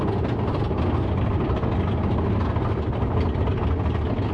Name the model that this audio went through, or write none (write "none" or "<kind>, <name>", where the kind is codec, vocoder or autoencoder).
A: none